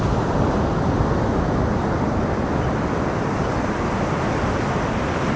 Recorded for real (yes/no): yes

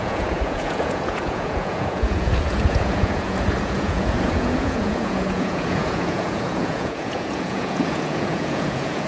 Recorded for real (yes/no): no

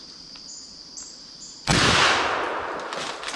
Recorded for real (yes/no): yes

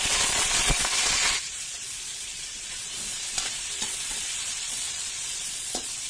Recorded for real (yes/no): no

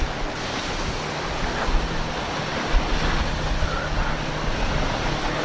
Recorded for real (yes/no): yes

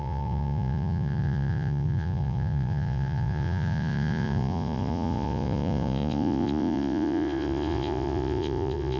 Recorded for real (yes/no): no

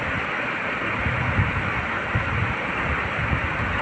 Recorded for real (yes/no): yes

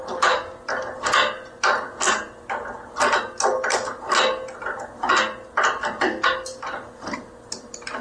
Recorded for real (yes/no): yes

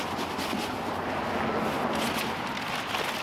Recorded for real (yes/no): yes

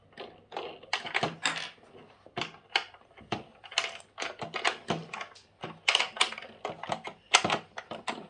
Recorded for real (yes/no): yes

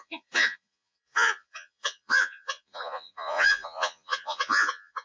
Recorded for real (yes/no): no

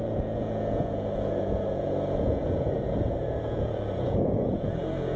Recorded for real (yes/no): no